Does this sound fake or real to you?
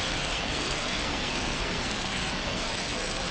fake